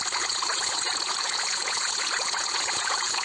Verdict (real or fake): fake